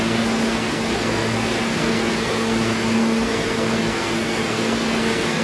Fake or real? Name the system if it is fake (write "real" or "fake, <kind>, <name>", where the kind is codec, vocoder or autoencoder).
fake, codec, SNAC